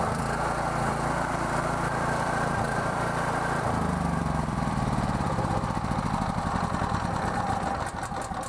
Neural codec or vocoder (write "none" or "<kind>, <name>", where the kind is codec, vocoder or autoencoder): vocoder, BigVGAN v2